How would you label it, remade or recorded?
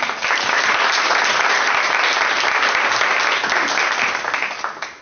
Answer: recorded